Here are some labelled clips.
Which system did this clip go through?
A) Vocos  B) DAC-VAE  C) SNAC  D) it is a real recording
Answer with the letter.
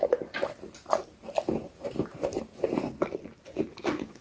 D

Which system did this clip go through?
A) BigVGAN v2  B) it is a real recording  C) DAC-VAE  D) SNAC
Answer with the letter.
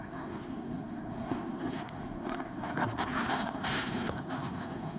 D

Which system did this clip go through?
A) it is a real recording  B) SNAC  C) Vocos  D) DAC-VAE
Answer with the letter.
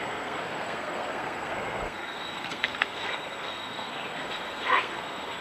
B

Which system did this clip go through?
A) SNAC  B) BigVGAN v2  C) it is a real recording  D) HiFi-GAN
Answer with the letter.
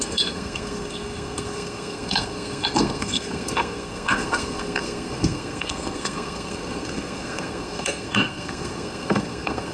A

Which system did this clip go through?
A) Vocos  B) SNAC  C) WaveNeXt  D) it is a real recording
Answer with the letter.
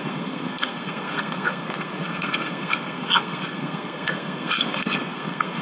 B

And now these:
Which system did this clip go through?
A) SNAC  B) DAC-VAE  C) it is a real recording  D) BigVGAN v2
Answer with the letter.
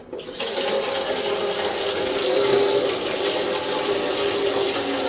C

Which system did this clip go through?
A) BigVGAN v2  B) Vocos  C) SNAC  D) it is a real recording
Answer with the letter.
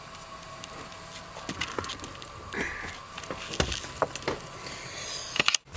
D